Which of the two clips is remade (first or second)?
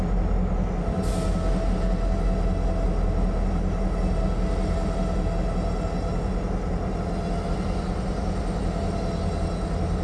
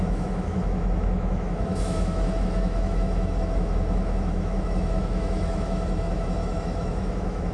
second